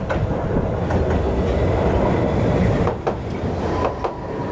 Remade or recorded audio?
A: recorded